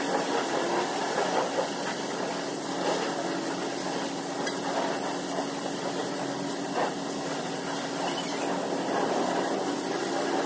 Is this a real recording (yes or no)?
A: yes